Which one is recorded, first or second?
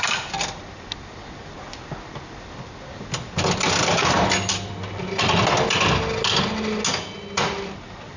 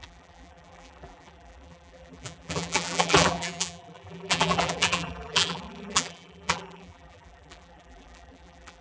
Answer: first